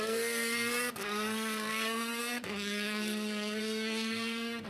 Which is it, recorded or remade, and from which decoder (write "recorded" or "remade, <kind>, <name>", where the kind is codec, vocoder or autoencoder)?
remade, codec, SNAC